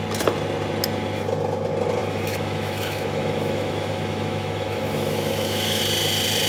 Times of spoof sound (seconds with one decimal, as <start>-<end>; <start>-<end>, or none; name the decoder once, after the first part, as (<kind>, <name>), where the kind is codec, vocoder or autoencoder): 2.0-5.8 (autoencoder, DAC-VAE)